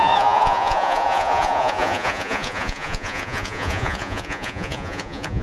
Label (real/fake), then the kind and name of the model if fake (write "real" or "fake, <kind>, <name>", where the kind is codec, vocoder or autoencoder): fake, vocoder, Vocos